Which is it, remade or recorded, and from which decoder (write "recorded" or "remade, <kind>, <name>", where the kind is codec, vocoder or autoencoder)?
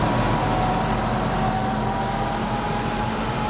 recorded